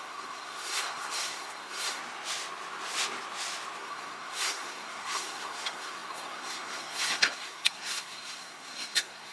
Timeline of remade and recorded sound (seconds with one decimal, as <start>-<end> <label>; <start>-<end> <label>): 0.0-2.0 remade; 2.0-3.8 recorded; 3.8-9.3 remade